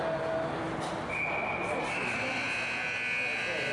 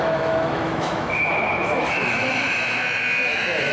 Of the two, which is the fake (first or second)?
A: second